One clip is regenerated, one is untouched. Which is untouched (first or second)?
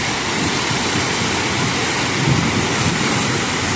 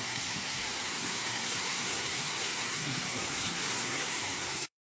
first